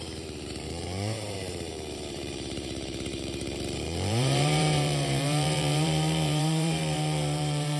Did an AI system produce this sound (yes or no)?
yes